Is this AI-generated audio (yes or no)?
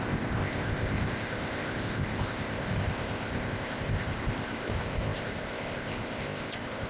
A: yes